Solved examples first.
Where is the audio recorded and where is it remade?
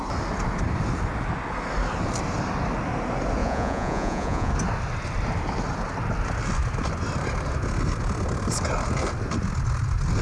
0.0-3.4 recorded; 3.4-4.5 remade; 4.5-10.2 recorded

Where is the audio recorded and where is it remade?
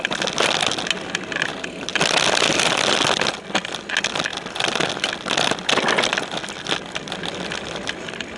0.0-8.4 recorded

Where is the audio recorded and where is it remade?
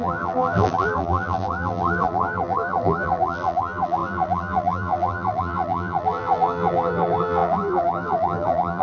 0.0-8.8 remade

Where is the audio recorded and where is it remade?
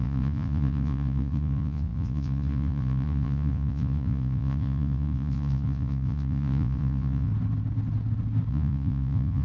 0.0-7.3 remade; 7.3-8.5 recorded; 8.5-9.4 remade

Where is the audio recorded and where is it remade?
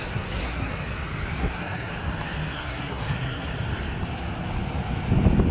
0.0-0.7 remade; 0.7-1.4 recorded; 1.4-1.9 remade; 1.9-2.5 recorded; 2.5-3.5 remade; 3.5-5.5 recorded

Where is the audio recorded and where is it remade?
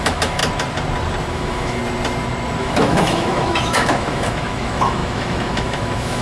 0.0-0.4 remade; 0.4-1.3 recorded; 1.3-1.8 remade; 1.8-2.6 recorded; 2.6-6.2 remade